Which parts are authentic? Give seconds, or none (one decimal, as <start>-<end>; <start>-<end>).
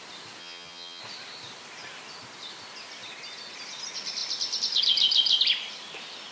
0.0-0.4; 1.0-6.3